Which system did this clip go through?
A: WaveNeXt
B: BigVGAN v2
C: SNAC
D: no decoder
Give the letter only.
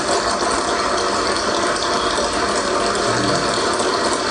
D